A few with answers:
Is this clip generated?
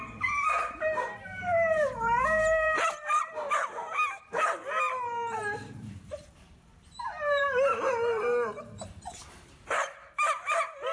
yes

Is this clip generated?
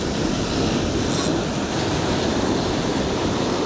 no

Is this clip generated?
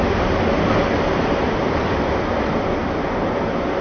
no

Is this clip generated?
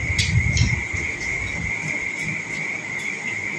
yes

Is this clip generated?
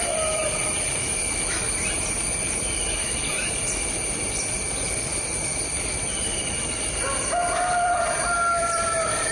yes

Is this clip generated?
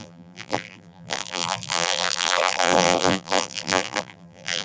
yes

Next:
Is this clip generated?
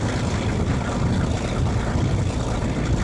yes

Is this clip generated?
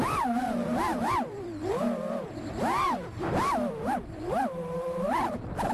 yes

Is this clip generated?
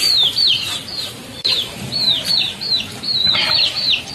yes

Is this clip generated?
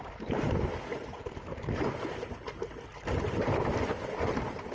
no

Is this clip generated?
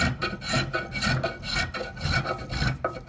no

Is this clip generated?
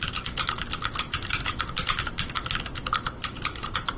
yes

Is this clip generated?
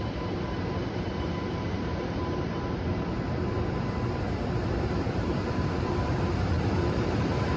yes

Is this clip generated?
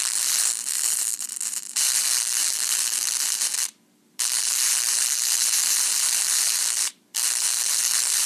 yes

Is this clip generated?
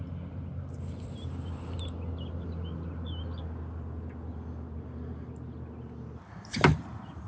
no